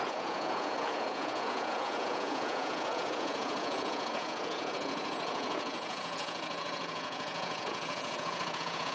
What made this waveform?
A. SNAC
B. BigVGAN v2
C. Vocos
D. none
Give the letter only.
C